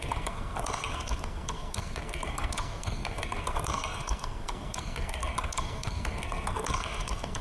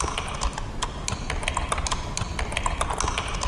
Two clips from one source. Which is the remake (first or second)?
first